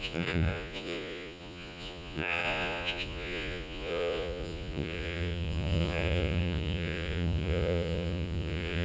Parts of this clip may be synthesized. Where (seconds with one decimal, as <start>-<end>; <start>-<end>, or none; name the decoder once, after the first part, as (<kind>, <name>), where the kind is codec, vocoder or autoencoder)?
0.0-8.8 (vocoder, Vocos)